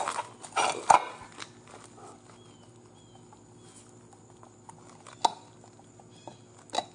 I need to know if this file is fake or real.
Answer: real